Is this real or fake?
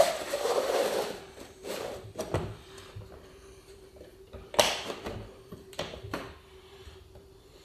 fake